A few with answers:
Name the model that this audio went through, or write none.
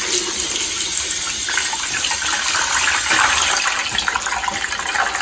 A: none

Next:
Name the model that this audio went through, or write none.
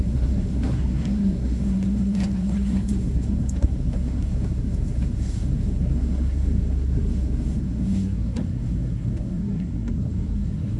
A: codec, SNAC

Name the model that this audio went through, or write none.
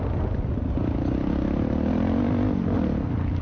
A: none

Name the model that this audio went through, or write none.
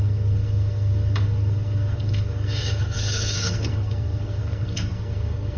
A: codec, SNAC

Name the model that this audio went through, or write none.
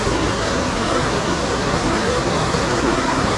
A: codec, SNAC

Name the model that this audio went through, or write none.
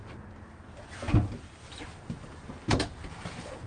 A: none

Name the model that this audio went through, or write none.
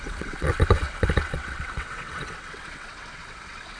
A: vocoder, WaveNeXt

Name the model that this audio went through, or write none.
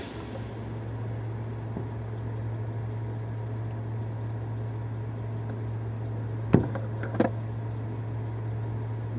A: none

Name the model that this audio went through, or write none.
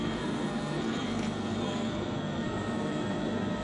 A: codec, SNAC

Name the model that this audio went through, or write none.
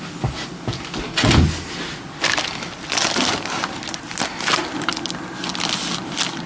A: none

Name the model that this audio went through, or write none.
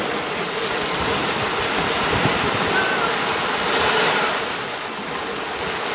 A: none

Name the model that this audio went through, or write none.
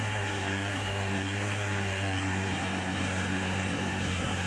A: codec, SNAC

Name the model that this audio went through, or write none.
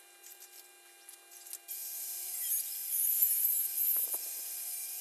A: none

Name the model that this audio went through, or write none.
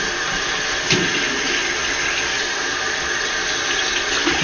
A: none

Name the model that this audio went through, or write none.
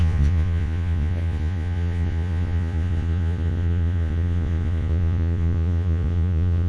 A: vocoder, Vocos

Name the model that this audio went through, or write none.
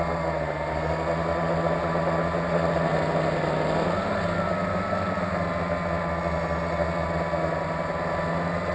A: none